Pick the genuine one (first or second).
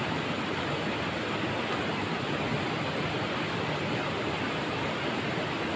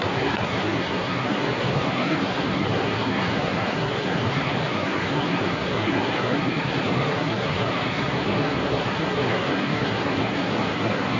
first